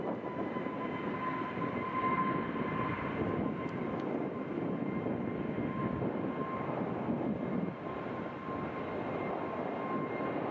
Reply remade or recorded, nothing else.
recorded